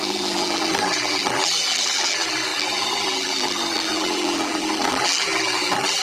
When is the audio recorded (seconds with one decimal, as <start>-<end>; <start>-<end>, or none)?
none